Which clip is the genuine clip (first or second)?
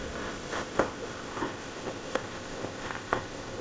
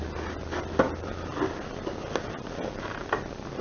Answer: second